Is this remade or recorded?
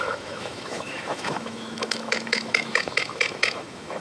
remade